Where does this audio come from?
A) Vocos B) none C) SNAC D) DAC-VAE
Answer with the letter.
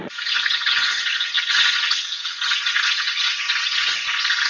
A